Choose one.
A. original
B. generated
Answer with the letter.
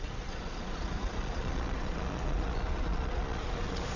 B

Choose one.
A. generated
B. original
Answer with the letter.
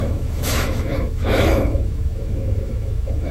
A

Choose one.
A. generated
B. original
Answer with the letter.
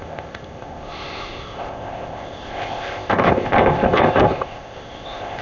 A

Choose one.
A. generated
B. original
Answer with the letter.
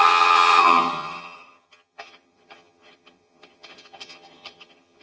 A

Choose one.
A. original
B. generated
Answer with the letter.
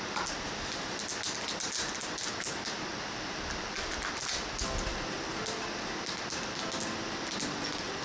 A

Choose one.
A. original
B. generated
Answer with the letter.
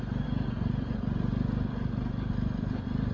A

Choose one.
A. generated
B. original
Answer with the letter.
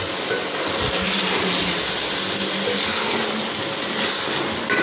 B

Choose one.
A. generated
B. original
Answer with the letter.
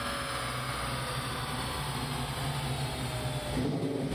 B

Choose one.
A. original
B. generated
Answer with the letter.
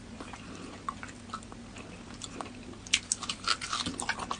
A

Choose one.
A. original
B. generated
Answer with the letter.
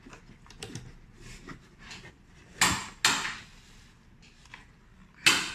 A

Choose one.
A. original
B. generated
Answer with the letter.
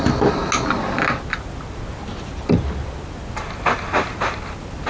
A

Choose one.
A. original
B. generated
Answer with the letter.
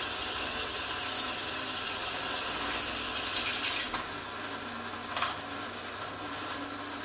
A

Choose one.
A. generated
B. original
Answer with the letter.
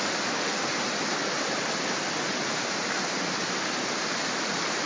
A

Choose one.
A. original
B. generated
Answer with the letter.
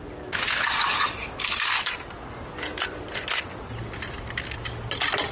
A